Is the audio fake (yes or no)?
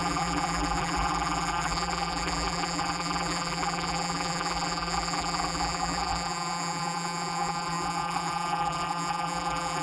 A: yes